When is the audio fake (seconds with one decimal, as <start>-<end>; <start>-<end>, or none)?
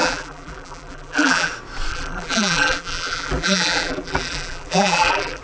0.0-1.5; 1.9-5.4